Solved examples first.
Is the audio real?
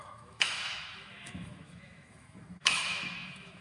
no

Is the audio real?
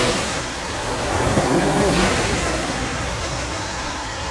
no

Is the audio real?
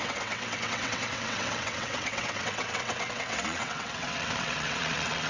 no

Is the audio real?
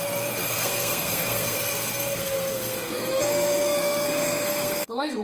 no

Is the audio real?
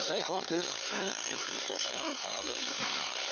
no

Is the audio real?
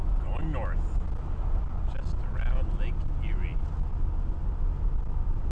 yes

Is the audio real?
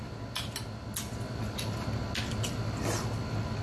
yes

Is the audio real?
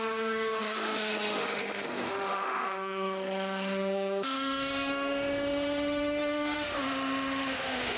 no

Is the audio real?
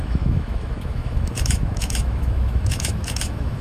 no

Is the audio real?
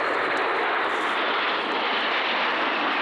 yes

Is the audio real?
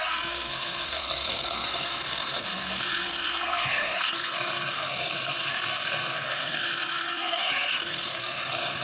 no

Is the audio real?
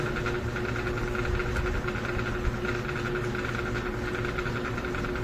yes